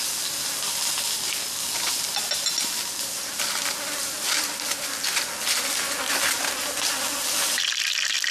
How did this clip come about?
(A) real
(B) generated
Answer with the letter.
A